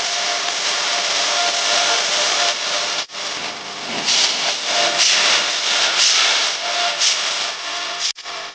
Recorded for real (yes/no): yes